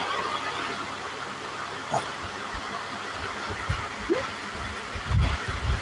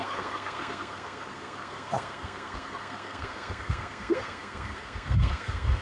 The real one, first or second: first